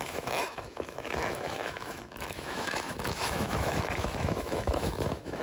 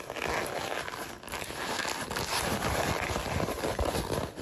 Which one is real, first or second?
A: second